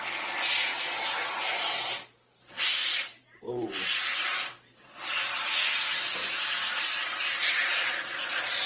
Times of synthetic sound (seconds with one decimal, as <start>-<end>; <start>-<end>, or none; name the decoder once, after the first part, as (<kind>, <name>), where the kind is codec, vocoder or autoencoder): 0.0-8.7 (vocoder, BigVGAN v2)